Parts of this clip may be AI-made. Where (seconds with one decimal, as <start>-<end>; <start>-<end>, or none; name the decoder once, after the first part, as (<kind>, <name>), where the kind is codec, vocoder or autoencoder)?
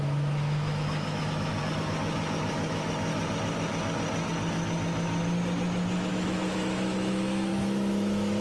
0.0-1.6 (autoencoder, DAC-VAE); 2.5-3.1; 6.1-8.4